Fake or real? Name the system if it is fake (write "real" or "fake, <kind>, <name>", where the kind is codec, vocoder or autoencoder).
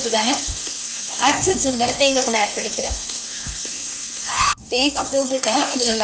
fake, codec, SNAC